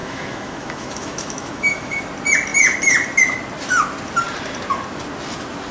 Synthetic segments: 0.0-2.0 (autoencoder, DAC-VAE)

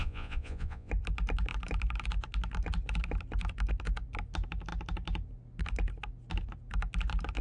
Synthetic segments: 0.0-0.9 (vocoder, Vocos)